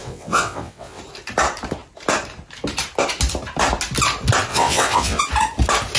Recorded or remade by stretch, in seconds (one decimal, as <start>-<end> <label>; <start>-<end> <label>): 0.0-1.0 remade; 1.0-4.5 recorded; 4.5-5.2 remade; 5.2-6.0 recorded